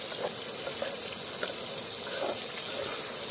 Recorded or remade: recorded